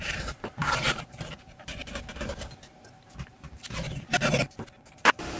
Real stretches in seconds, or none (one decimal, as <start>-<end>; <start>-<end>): 1.8-5.0